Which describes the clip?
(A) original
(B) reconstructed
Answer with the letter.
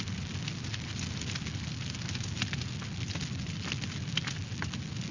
A